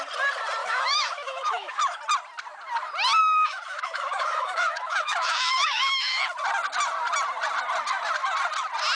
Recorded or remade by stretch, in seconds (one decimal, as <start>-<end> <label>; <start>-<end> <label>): 0.0-0.6 recorded; 0.6-2.0 remade; 2.0-3.2 recorded; 3.2-6.2 remade; 6.2-8.9 recorded